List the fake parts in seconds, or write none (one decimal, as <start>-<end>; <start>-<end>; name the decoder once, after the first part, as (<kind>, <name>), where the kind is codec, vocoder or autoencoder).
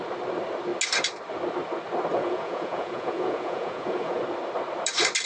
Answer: 2.1-4.2 (vocoder, Vocos)